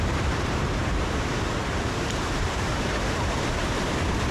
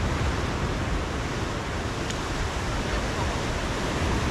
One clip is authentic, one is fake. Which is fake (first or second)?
first